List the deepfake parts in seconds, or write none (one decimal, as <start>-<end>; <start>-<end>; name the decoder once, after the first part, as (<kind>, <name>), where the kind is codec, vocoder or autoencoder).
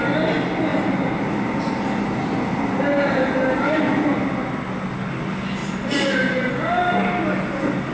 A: 0.7-3.8 (vocoder, BigVGAN v2); 5.6-6.5